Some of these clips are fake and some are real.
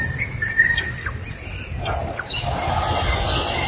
real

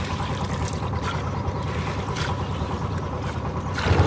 real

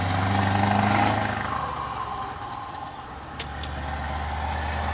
real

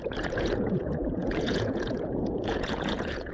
fake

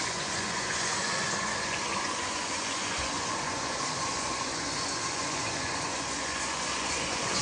fake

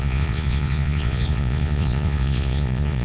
fake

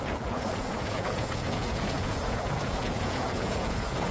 fake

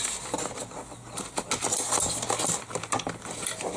real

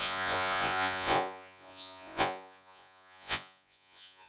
fake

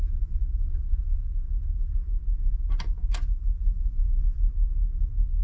real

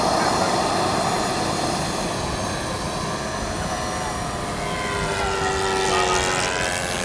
real